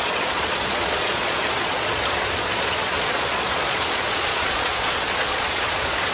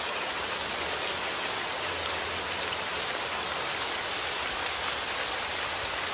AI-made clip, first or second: first